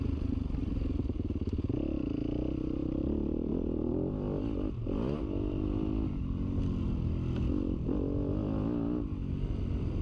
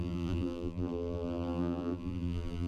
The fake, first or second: second